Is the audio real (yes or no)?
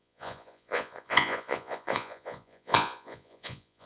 no